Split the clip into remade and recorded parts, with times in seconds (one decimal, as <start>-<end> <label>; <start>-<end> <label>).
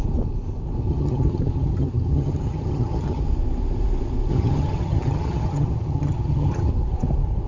0.0-0.9 recorded; 0.9-3.2 remade; 3.2-4.3 recorded; 4.3-6.7 remade; 6.7-7.5 recorded